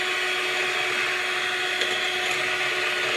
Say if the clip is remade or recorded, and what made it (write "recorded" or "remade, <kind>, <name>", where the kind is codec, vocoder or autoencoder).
recorded